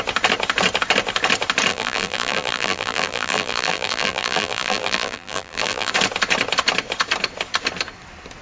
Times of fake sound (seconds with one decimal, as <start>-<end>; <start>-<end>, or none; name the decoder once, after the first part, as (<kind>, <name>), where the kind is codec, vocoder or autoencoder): 1.7-5.9 (vocoder, BigVGAN v2)